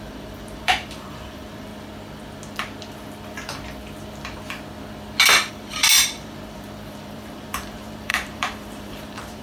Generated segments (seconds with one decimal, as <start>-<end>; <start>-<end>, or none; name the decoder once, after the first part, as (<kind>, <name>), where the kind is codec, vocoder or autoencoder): 0.0-1.7 (vocoder, BigVGAN v2); 5.5-9.4